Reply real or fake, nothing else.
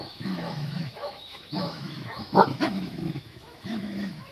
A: fake